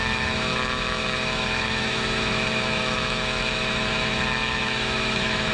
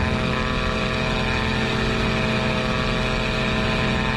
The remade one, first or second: first